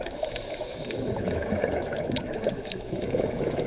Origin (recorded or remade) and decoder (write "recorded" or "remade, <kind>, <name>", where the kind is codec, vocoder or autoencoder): remade, autoencoder, DAC-VAE